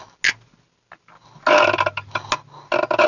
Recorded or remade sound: recorded